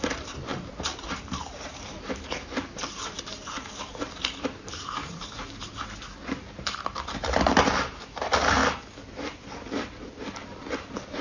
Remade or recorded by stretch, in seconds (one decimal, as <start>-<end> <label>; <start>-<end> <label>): 0.0-8.6 remade; 8.6-10.6 recorded; 10.6-11.2 remade